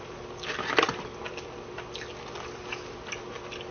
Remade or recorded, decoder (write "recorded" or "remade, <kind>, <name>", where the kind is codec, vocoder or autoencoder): recorded